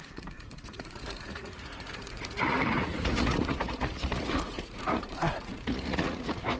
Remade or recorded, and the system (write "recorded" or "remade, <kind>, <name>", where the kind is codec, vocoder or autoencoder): remade, vocoder, Vocos